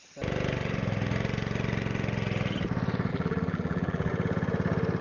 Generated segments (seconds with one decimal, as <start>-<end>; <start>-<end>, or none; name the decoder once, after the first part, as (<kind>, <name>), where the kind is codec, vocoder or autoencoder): 3.1-4.1 (vocoder, BigVGAN v2)